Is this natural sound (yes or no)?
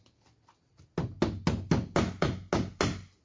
yes